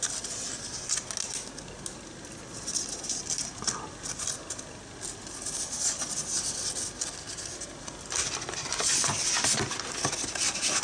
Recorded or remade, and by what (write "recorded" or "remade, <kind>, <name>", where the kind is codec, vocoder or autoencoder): recorded